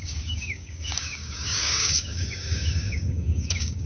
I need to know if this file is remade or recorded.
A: remade